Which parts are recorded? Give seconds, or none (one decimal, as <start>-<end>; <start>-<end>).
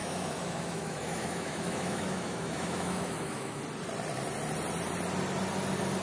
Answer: 3.6-6.0